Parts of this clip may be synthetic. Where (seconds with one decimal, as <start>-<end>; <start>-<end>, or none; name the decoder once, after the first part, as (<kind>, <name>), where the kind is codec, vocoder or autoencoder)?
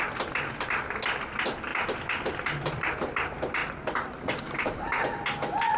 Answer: none